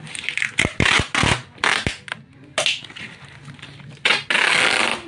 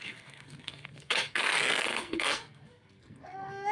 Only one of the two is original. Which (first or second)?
first